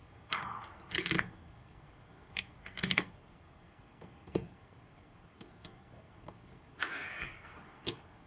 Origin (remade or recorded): remade